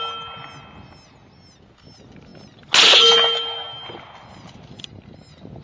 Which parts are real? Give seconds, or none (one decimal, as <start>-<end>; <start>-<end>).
0.0-5.6